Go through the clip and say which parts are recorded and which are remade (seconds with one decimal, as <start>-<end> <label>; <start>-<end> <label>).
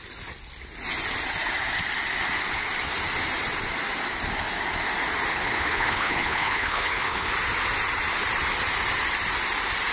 0.0-5.3 recorded; 5.3-7.3 remade; 7.3-9.9 recorded